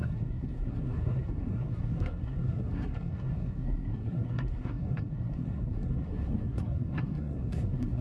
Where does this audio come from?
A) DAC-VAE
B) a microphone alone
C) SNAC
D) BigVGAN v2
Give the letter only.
C